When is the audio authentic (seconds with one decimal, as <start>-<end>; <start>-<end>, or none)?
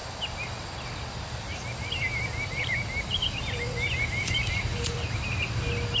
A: 0.0-2.1; 5.0-6.0